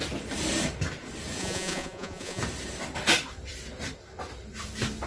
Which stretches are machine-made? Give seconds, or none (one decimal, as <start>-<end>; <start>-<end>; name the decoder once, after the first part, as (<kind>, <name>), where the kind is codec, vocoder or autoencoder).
1.4-2.4 (vocoder, Vocos)